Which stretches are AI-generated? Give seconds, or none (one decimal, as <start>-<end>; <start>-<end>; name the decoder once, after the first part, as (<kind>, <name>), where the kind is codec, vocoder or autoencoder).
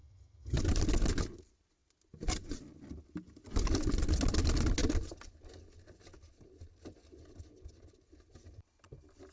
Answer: 0.0-0.6 (vocoder, HiFi-GAN)